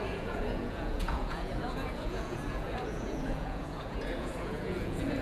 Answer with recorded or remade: remade